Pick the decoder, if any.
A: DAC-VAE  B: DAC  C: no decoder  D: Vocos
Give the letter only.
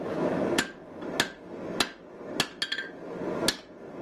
C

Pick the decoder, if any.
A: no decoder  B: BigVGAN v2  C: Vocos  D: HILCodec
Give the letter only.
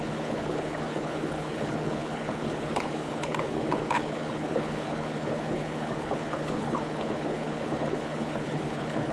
D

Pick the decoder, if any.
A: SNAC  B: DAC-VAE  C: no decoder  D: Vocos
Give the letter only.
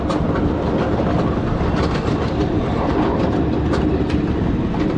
C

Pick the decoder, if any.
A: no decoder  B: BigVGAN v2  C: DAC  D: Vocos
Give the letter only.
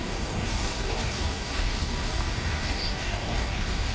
C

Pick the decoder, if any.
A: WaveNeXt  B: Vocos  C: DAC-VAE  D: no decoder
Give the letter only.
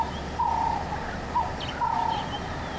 D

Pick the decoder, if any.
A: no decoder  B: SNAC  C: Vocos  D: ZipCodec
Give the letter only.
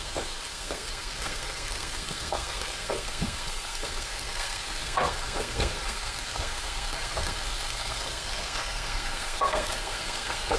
B